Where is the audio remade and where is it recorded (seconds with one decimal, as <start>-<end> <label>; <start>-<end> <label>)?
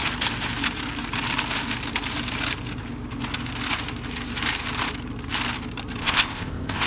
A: 0.0-6.0 recorded; 6.0-6.9 remade